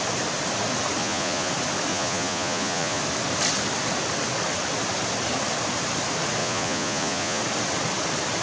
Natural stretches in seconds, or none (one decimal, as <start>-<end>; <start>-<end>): 0.0-1.0; 1.5-1.9; 3.0-6.4; 7.4-8.4